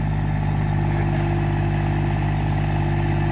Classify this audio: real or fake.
real